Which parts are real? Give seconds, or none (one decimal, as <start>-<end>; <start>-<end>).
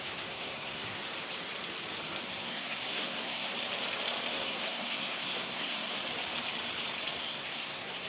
1.0-2.3; 3.5-4.3; 6.0-7.2